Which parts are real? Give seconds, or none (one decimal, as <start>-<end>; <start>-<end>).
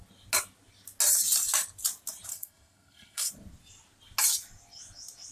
0.0-2.3; 3.3-5.3